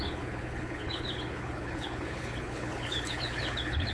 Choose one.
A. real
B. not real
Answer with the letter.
B